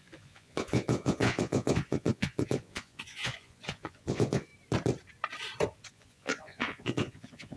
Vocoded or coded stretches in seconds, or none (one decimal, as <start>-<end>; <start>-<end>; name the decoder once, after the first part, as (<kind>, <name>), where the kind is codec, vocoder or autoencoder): 0.0-4.5 (vocoder, Vocos); 5.9-7.6